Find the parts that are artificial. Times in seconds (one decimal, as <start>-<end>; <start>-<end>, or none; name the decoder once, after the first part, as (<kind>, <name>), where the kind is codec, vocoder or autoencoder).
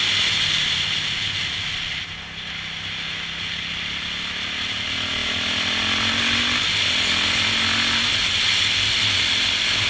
none